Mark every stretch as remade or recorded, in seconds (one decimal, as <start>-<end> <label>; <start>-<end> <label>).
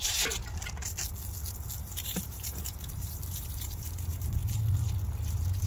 0.0-0.4 remade; 0.4-1.8 recorded; 1.8-4.4 remade; 4.4-5.3 recorded; 5.3-5.7 remade